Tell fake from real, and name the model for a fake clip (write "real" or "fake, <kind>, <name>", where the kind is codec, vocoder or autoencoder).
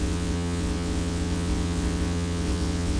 fake, vocoder, WaveNeXt